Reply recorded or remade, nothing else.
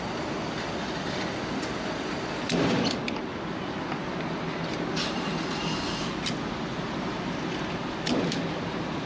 recorded